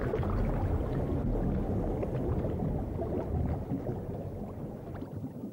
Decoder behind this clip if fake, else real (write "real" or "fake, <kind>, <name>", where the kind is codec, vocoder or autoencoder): real